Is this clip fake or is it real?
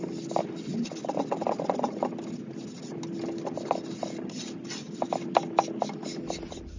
real